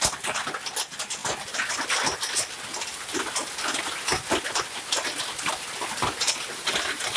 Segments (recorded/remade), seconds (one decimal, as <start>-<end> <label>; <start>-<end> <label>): 0.0-7.2 recorded